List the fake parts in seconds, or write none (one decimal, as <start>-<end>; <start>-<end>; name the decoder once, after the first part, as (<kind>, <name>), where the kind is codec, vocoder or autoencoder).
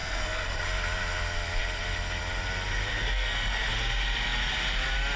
0.0-0.6 (codec, SNAC); 2.9-3.7